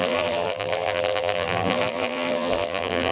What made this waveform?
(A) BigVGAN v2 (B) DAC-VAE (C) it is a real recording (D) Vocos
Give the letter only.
A